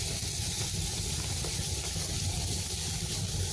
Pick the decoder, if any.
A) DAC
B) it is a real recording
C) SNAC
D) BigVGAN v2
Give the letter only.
B